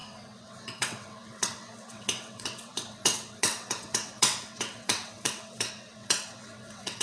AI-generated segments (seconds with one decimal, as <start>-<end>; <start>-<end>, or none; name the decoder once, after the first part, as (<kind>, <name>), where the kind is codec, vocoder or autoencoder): 0.0-7.0 (vocoder, WaveNeXt)